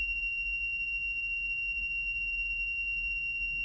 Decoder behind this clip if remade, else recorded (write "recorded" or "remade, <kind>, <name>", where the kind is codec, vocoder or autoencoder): remade, vocoder, BigVGAN v2